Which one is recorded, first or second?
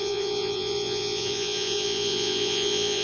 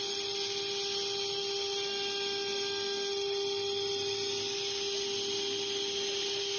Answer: second